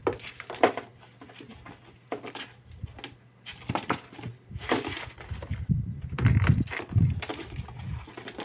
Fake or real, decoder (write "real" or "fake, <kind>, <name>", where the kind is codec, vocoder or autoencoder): real